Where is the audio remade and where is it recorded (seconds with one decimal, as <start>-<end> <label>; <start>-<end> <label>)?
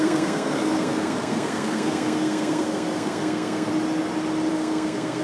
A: 0.0-3.7 remade; 3.7-4.5 recorded; 4.5-5.2 remade